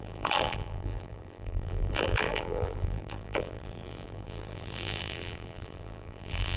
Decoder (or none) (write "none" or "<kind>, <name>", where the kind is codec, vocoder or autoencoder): vocoder, BigVGAN v2